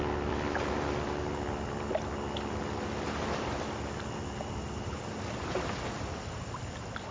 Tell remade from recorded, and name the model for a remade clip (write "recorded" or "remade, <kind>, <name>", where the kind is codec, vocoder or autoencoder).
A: recorded